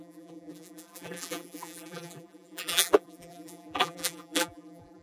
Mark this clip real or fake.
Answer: fake